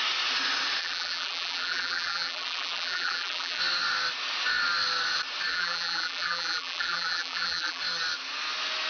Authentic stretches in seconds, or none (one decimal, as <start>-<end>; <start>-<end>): 0.0-0.8; 3.6-5.5; 7.8-8.9